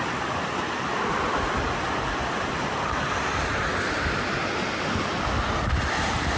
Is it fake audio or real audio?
real